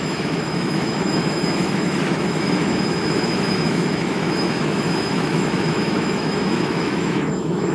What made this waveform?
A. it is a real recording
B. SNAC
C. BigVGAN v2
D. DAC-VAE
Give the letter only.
D